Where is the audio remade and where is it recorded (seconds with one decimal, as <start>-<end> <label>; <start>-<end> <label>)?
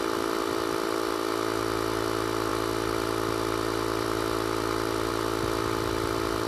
0.0-6.5 recorded